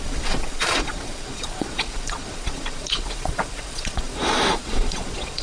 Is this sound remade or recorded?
remade